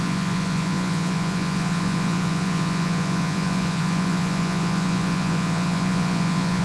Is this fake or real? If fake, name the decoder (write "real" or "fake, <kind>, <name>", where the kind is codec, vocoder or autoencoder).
fake, vocoder, Vocos